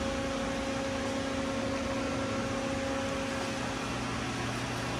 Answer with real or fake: real